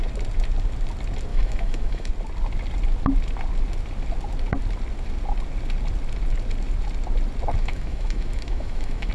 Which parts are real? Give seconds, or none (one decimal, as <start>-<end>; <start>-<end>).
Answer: 0.0-1.3; 2.1-7.6